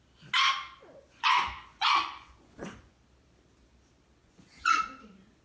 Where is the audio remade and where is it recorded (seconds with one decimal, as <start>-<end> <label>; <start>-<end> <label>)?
0.0-1.1 recorded; 1.1-3.0 remade; 3.0-4.2 recorded; 4.2-4.8 remade; 4.8-5.4 recorded